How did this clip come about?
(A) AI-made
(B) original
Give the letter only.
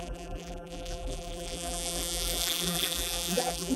A